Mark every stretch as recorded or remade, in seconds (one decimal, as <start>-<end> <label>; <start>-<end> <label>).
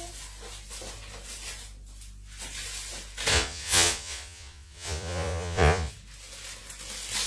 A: 0.0-3.3 recorded; 3.3-5.9 remade; 5.9-7.3 recorded